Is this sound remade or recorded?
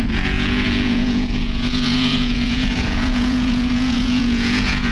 remade